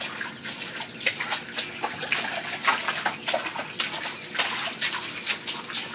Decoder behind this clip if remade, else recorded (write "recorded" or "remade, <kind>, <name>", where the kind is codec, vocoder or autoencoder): recorded